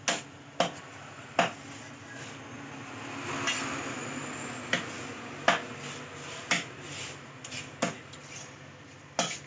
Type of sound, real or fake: real